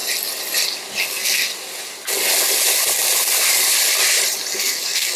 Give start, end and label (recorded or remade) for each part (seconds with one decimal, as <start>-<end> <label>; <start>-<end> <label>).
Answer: 0.0-1.0 recorded; 1.0-1.5 remade; 1.5-4.5 recorded; 4.5-5.2 remade